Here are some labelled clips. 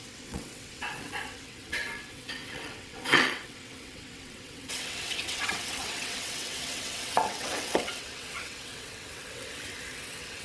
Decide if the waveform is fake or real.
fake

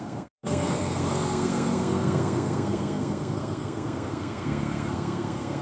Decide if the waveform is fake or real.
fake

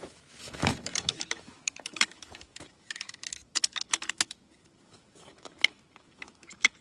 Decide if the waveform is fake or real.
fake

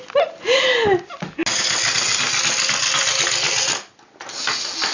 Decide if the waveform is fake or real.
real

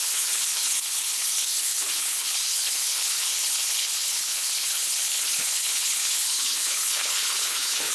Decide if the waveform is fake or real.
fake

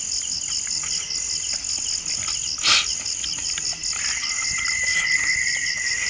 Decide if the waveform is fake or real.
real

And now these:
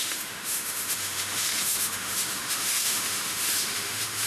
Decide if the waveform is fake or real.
fake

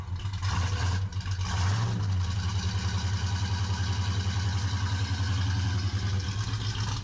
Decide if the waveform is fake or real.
real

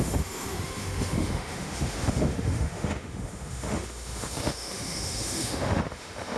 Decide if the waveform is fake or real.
fake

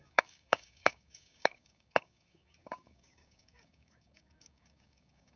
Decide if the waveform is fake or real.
fake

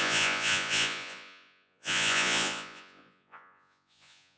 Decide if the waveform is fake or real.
fake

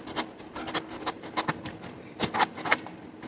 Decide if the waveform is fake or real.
real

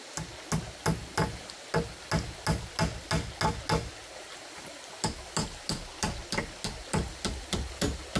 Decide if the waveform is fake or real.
real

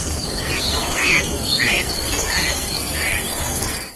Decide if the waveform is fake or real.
fake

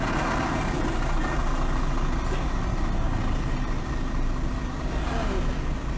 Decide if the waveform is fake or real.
real